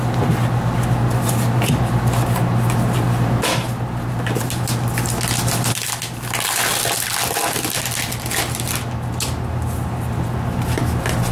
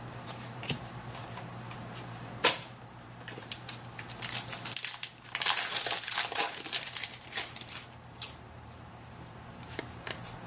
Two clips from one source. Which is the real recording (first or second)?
first